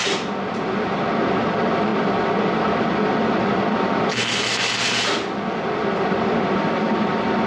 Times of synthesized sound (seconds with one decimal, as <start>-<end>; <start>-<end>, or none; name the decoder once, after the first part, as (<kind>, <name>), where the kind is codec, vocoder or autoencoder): 0.0-7.5 (vocoder, BigVGAN v2)